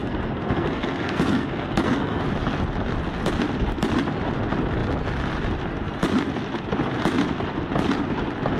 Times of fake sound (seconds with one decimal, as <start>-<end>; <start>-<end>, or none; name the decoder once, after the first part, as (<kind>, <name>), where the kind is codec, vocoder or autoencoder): 0.0-2.2 (codec, SNAC)